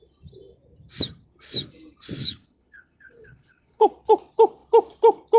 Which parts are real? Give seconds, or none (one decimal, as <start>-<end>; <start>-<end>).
0.0-2.2; 3.9-5.4